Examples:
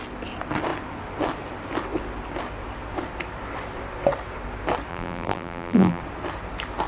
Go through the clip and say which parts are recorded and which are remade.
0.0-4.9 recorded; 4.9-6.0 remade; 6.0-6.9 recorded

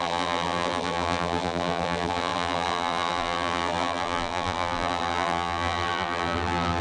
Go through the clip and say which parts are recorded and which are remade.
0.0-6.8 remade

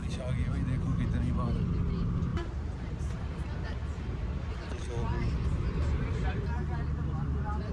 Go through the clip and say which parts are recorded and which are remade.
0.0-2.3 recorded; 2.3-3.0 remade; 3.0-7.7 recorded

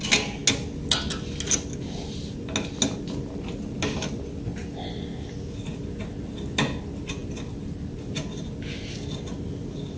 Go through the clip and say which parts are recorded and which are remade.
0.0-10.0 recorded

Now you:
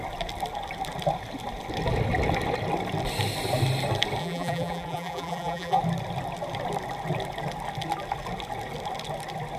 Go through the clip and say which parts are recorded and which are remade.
0.0-4.2 recorded; 4.2-5.8 remade; 5.8-9.6 recorded